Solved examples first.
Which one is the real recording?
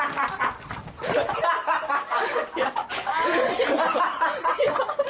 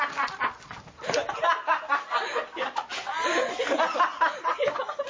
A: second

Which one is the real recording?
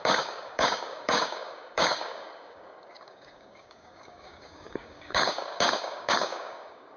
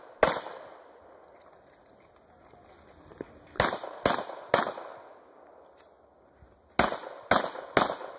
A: second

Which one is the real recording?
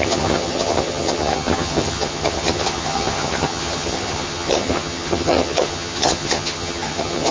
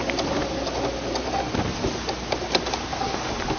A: second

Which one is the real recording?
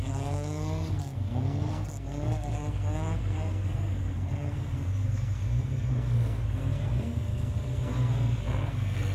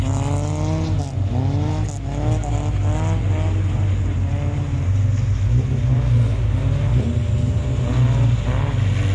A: second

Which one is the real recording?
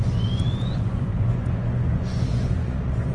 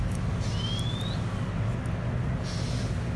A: second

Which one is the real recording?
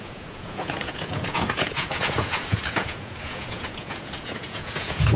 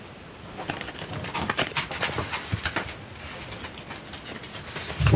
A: second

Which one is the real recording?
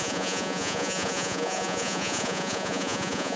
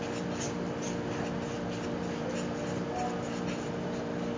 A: second